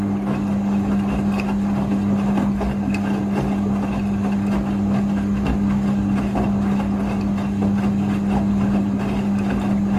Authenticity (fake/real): real